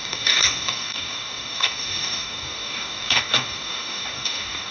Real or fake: fake